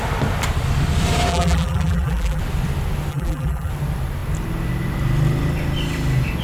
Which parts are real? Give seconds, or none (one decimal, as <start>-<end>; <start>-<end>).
0.0-1.3; 2.4-3.1; 3.7-6.4

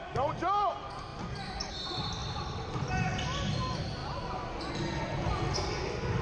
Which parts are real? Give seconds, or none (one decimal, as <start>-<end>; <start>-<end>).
0.0-2.2; 2.9-6.2

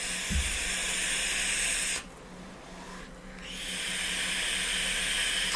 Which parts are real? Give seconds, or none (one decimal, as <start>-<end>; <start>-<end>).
0.0-5.6

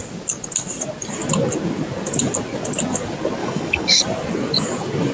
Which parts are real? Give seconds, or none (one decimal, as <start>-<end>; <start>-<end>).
0.0-3.4; 4.0-5.1

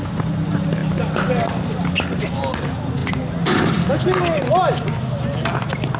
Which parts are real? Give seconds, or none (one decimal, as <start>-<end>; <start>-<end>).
0.0-6.0

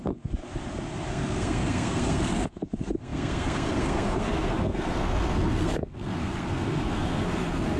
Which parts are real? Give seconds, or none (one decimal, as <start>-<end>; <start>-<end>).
0.4-1.1

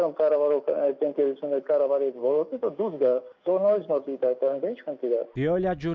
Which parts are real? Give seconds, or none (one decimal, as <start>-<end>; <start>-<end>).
0.0-2.2; 4.8-5.9